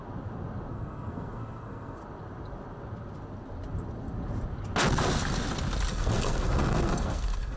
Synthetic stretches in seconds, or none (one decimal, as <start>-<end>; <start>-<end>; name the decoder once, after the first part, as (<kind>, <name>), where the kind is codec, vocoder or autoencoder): 0.7-2.0 (codec, SNAC); 5.9-7.6